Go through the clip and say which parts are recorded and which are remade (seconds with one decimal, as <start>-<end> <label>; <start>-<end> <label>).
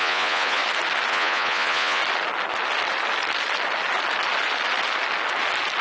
0.0-0.6 remade; 0.6-1.1 recorded; 1.1-2.0 remade; 2.0-5.8 recorded